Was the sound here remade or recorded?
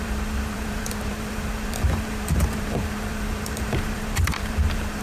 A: remade